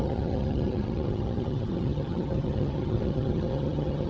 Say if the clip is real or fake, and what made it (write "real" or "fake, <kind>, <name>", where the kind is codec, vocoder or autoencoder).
fake, vocoder, HiFi-GAN